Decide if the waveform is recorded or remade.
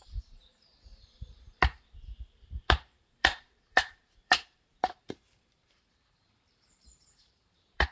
remade